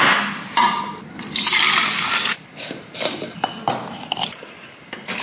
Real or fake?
real